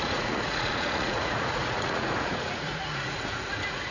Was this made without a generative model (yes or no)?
no